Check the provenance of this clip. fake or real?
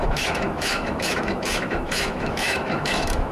fake